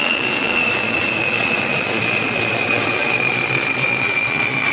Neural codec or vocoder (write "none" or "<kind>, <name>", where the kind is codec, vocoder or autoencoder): vocoder, Vocos